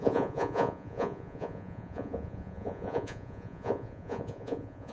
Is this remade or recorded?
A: remade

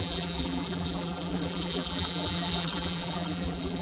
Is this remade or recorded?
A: remade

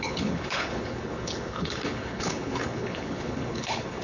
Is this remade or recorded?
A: remade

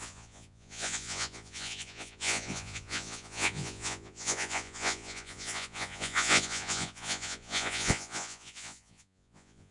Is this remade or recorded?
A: remade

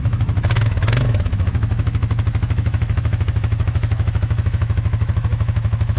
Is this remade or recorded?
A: remade